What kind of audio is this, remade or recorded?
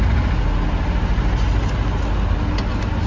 recorded